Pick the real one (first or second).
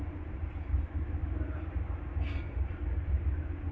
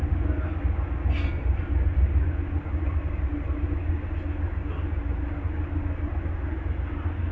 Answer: second